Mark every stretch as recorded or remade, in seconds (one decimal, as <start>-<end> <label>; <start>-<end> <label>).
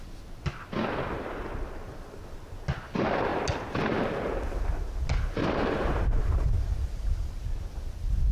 0.0-5.4 recorded; 5.4-7.3 remade; 7.3-8.3 recorded